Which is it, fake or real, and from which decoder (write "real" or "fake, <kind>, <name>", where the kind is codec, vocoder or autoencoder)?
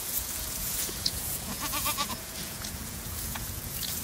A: fake, vocoder, Vocos